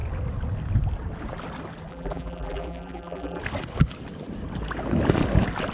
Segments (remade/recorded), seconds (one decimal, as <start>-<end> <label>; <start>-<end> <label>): 0.0-1.9 recorded; 1.9-3.4 remade; 3.4-5.7 recorded